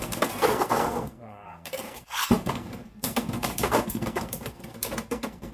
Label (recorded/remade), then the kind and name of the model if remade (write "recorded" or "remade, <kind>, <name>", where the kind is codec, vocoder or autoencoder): remade, codec, SNAC